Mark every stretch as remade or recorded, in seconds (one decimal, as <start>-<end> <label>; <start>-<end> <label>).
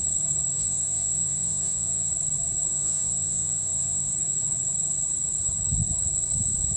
0.0-0.5 recorded; 0.5-2.1 remade; 2.1-2.7 recorded; 2.7-4.1 remade; 4.1-6.8 recorded